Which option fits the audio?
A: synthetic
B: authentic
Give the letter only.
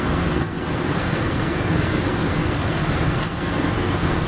A